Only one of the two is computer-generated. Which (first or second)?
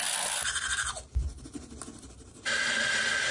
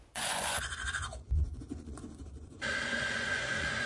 second